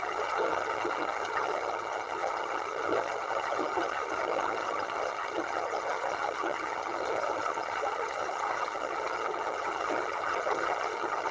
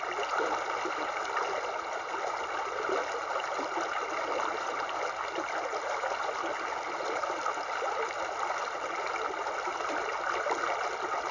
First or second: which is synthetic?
first